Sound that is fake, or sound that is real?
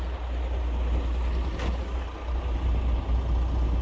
real